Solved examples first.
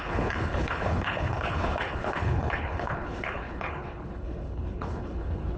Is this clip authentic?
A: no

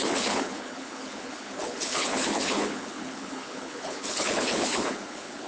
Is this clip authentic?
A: no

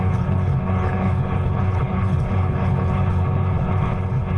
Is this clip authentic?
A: no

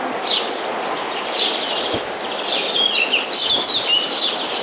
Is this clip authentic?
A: yes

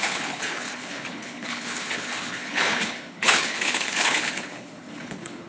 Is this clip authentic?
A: no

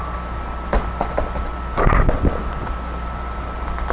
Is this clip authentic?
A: yes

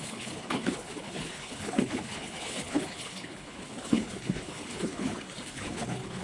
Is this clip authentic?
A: no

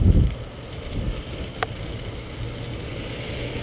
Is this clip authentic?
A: yes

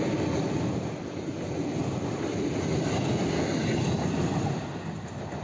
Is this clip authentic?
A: yes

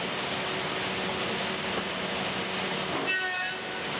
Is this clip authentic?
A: yes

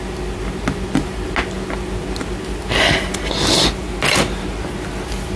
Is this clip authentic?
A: yes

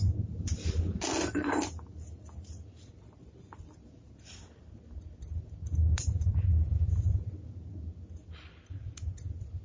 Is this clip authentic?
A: yes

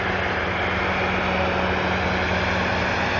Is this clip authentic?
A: yes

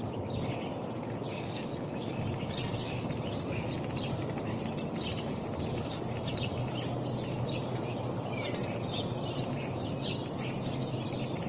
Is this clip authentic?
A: yes